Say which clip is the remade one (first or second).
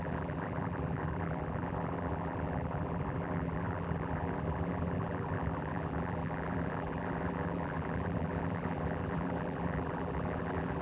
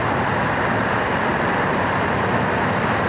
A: first